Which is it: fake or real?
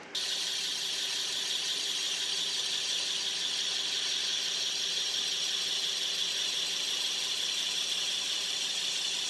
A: real